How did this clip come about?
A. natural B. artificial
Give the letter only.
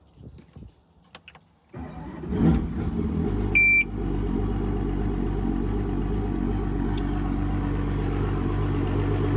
A